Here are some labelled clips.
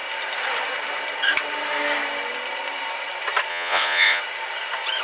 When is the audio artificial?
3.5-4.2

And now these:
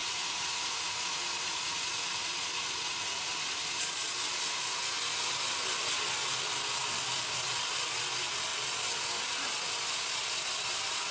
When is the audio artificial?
0.0-3.3